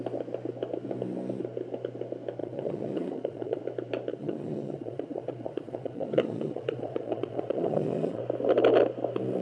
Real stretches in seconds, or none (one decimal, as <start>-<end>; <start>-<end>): 0.0-2.4; 3.6-4.1; 8.2-9.4

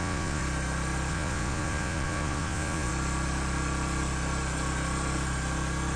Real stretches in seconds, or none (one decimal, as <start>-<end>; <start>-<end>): 0.4-1.1; 2.9-6.0

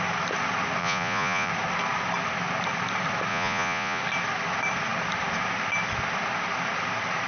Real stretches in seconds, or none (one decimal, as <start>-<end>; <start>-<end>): 0.0-0.8; 1.5-3.3; 4.0-7.3

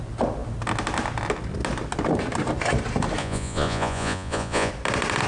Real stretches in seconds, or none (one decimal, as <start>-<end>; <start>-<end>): 0.0-3.2; 4.7-5.3

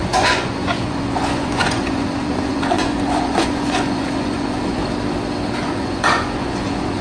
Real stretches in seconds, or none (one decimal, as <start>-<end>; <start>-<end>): 4.8-5.5

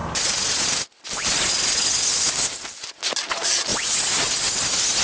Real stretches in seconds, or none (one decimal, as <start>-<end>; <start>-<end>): 0.0-5.0

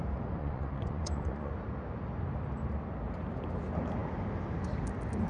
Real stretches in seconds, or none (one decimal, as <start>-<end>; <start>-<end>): 0.0-0.4; 1.5-5.3

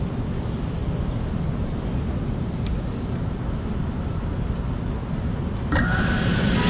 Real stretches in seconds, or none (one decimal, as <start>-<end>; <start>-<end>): 0.0-6.7